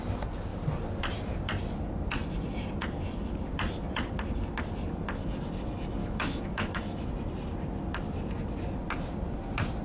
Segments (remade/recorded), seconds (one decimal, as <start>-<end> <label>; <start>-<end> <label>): 0.0-6.0 recorded; 6.0-7.1 remade; 7.1-9.8 recorded